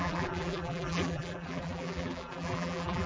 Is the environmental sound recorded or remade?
remade